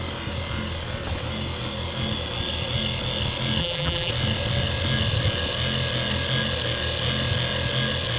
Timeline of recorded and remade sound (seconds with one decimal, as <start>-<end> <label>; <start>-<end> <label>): 0.0-3.6 recorded; 3.6-4.1 remade; 4.1-8.2 recorded